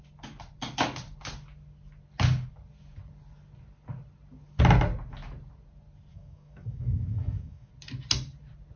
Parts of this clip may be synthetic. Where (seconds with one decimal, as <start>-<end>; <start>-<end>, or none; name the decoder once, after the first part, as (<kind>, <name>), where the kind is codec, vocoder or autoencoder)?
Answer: 6.1-7.7 (autoencoder, DAC-VAE)